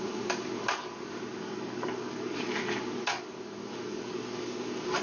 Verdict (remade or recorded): remade